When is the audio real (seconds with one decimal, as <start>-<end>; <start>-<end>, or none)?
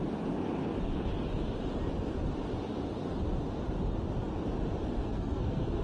0.0-5.0